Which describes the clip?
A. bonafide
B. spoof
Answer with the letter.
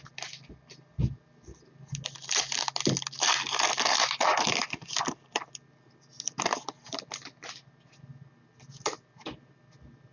A